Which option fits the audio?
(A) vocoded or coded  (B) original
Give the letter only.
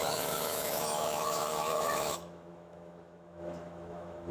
A